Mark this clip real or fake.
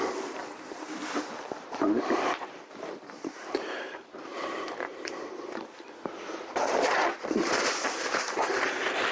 fake